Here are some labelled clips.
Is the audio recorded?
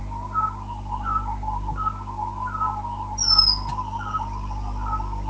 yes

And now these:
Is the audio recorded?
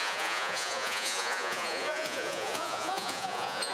no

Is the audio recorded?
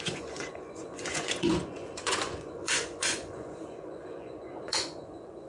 no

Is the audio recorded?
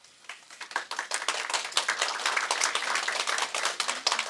yes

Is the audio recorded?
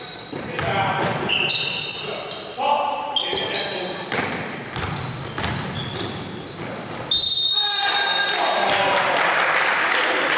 yes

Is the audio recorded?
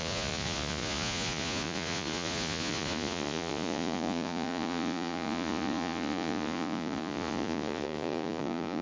no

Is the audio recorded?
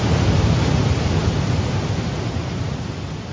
yes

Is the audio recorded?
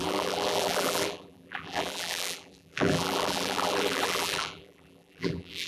no